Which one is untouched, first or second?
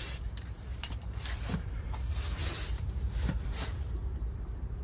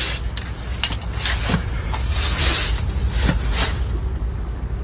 second